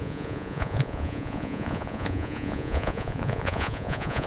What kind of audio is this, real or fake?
fake